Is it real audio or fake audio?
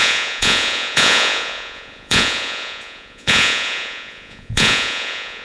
fake